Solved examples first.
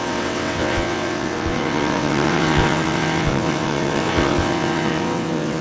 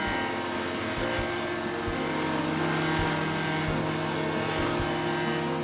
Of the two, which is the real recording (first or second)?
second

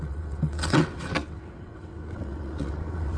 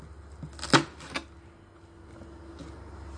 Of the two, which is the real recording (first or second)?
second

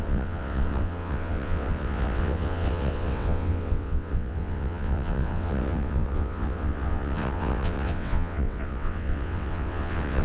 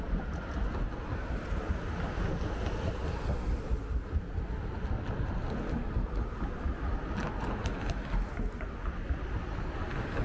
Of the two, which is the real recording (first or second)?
second